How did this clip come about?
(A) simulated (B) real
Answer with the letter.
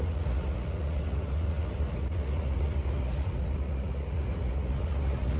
A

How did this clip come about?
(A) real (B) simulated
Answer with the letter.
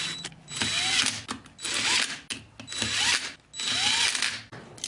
A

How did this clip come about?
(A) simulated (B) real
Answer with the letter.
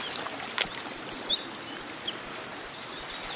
A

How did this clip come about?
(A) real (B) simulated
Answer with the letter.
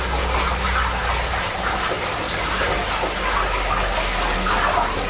A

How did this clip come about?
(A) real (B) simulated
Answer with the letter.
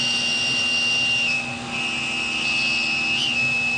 A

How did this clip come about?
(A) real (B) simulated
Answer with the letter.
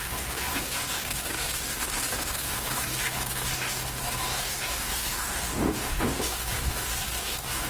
B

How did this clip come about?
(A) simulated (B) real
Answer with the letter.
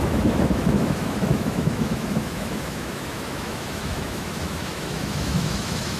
A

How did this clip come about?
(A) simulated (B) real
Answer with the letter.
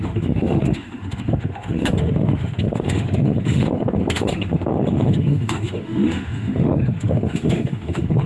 A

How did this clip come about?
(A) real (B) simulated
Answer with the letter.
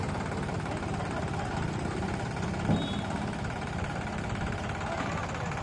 A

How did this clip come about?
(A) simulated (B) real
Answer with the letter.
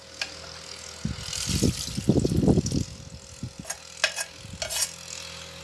B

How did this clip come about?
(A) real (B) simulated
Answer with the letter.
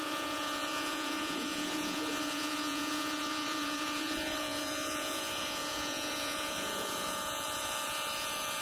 B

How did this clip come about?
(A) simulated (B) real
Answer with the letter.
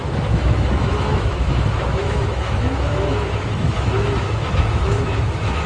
A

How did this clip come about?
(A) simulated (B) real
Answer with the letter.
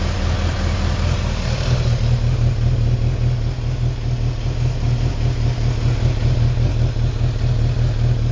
B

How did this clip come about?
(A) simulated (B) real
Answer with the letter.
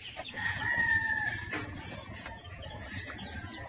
A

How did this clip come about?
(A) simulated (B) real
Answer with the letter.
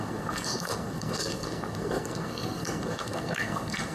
A